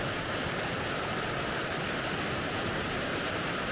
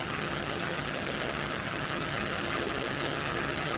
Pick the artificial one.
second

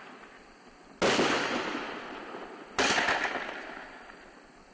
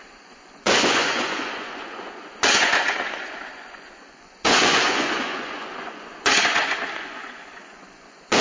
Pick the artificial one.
second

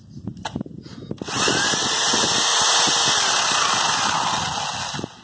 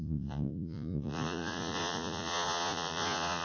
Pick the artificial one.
second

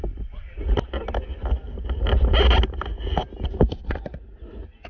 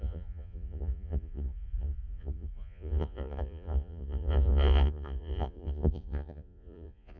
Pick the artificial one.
second